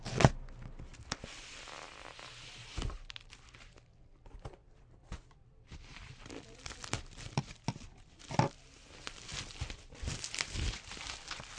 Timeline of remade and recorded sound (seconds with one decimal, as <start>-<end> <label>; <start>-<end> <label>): 0.0-4.6 recorded; 4.6-7.5 remade; 7.5-11.6 recorded